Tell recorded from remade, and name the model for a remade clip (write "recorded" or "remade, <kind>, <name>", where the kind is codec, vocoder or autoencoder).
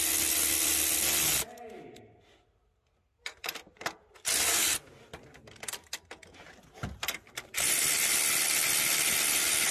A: recorded